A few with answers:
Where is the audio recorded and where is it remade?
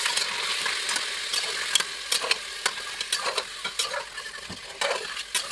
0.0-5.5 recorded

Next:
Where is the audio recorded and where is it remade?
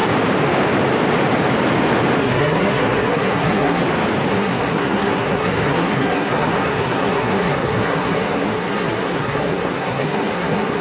0.0-2.2 recorded; 2.2-3.8 remade; 3.8-4.3 recorded; 4.3-10.8 remade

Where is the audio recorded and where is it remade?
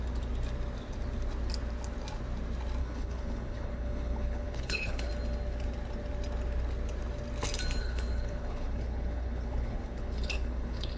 0.0-2.8 recorded; 2.8-5.1 remade; 5.1-7.8 recorded; 7.8-11.0 remade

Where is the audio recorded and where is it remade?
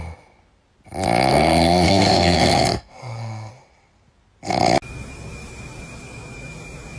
0.0-1.3 recorded; 1.3-3.5 remade; 3.5-7.0 recorded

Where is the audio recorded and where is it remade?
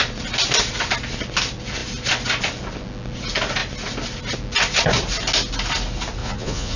0.0-6.2 recorded; 6.2-6.8 remade